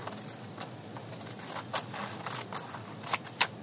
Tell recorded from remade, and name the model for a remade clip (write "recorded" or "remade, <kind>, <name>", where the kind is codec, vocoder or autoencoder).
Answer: recorded